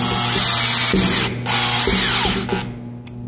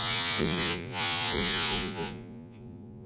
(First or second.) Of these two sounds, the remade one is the second